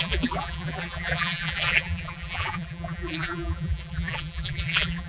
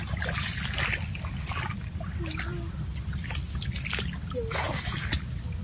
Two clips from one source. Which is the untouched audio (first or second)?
second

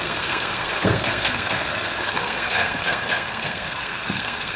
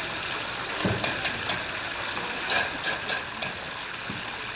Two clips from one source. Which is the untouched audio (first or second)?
second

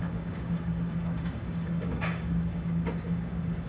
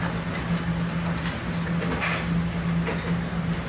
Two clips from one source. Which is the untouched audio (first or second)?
second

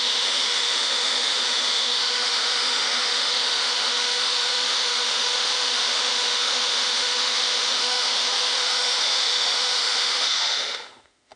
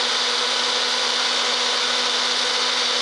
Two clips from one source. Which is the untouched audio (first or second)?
second